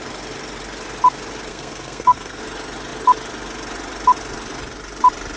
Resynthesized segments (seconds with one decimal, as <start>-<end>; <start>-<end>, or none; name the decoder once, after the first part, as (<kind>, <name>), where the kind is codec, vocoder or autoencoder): 1.5-2.4 (codec, SNAC)